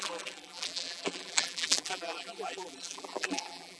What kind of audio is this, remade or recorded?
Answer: remade